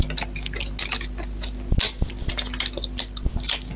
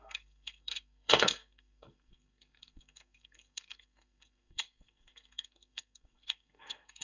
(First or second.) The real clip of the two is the first